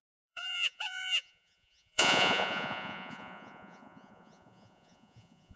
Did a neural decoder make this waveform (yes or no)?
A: yes